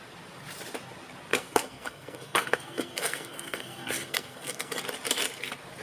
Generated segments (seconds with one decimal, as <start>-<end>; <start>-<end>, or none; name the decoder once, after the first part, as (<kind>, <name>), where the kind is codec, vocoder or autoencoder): 1.3-4.8 (codec, SNAC)